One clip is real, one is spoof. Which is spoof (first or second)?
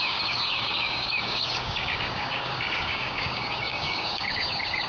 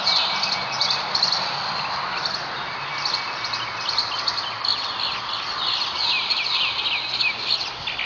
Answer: first